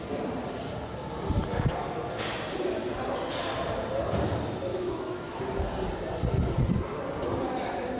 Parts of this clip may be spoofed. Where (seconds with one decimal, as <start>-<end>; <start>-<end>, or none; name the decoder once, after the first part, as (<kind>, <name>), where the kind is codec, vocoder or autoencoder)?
4.7-5.4 (autoencoder, DAC-VAE)